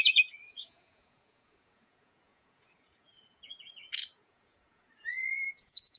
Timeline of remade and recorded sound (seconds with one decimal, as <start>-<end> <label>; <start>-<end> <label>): 0.0-6.0 remade